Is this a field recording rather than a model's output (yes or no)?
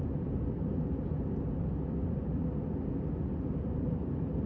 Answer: yes